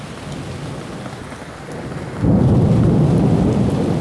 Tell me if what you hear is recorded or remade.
recorded